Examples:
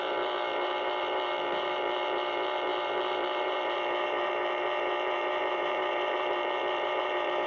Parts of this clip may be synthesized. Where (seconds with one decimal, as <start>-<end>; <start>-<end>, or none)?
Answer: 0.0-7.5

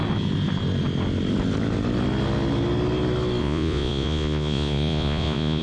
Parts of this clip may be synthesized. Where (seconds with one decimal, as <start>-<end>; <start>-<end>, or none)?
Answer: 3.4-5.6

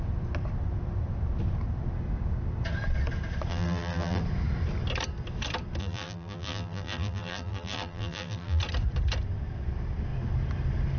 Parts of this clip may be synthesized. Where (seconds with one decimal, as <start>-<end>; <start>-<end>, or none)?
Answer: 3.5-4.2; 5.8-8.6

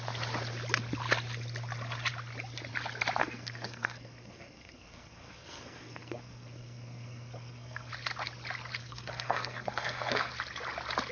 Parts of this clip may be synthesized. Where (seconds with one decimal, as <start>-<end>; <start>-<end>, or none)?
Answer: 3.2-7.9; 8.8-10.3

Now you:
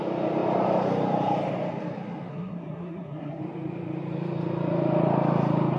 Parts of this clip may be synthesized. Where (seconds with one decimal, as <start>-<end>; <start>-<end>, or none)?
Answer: 2.3-3.4